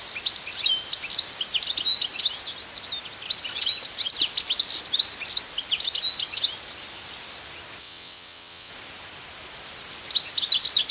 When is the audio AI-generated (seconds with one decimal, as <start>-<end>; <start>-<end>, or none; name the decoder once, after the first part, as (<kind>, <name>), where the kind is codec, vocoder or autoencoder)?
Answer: 7.8-8.7 (vocoder, WaveNeXt)